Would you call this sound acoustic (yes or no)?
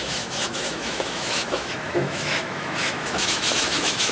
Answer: no